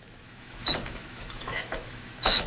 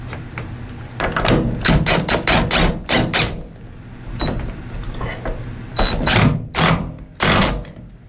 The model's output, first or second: first